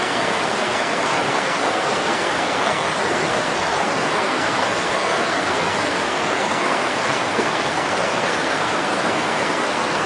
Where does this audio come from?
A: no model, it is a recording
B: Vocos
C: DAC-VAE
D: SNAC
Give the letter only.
D